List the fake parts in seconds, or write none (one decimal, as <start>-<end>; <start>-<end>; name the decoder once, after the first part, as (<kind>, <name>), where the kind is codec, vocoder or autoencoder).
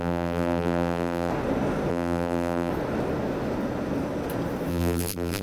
0.0-1.3 (vocoder, BigVGAN v2); 1.9-2.7; 4.7-5.4